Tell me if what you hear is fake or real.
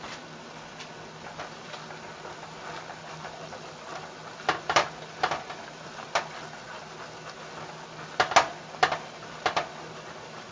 real